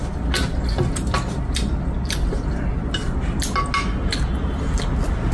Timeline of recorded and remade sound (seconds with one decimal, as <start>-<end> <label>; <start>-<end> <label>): 0.0-5.3 recorded